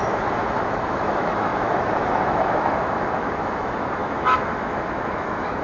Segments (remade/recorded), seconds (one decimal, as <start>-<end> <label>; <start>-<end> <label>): 0.0-5.6 remade

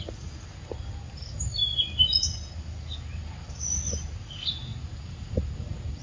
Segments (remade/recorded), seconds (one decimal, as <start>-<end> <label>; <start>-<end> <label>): 0.0-6.0 recorded

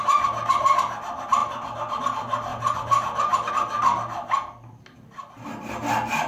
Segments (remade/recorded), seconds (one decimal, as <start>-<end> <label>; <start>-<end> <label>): 0.0-2.5 recorded; 2.5-3.5 remade; 3.5-6.3 recorded

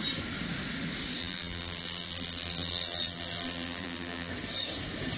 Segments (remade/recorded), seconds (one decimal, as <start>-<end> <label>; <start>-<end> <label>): 0.0-1.2 recorded; 1.2-4.3 remade; 4.3-5.2 recorded